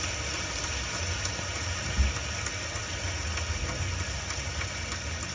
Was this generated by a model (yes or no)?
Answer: no